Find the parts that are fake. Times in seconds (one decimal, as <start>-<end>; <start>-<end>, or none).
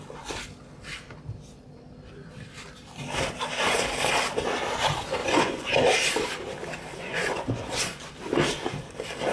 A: 5.2-5.9; 6.9-8.1